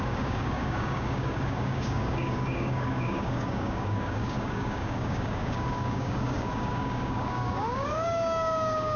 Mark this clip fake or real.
fake